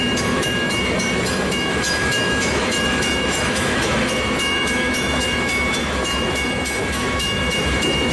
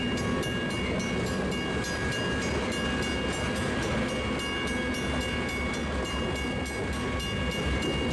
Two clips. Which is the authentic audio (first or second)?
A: second